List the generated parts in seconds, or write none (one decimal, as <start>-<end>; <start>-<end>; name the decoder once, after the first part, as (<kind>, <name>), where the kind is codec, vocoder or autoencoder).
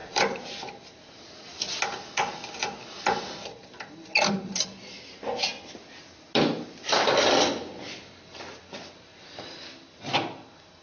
none